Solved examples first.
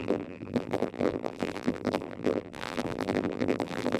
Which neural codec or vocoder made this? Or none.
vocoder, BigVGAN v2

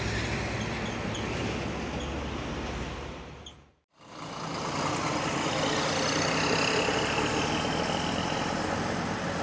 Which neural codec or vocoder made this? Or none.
none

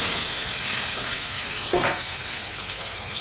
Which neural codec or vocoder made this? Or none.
codec, SNAC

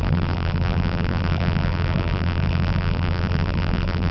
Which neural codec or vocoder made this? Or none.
vocoder, BigVGAN v2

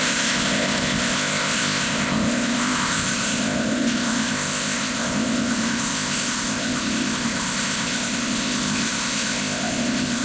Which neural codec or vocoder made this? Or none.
codec, ZipCodec